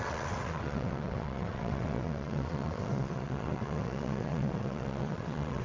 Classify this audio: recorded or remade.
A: remade